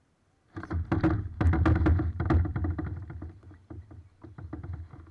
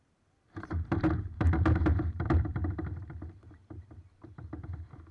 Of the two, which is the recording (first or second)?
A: first